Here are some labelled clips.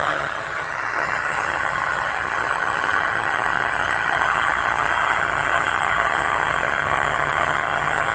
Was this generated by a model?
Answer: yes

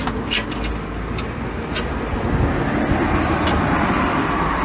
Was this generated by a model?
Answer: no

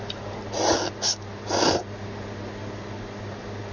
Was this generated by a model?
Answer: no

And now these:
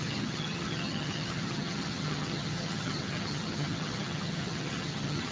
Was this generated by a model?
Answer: yes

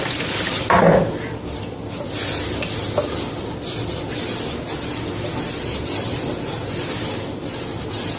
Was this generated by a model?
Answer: no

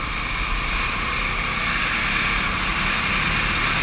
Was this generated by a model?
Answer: no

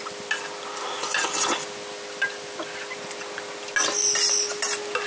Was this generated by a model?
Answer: no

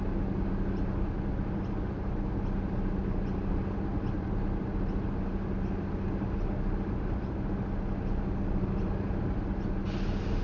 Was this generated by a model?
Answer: no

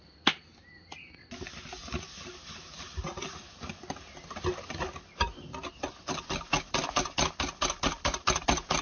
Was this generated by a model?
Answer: no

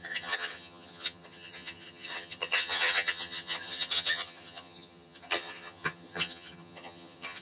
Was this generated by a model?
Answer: yes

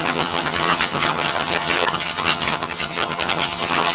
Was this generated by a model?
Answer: yes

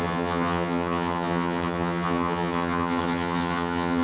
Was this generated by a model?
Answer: yes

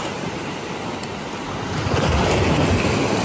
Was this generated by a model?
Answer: no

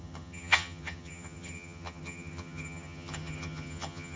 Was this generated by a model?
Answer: yes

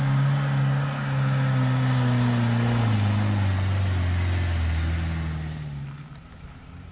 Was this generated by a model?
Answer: no